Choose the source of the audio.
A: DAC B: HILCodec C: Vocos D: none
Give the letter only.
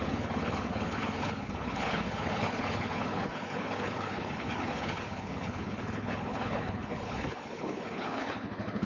B